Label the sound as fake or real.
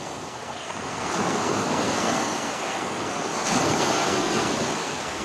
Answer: fake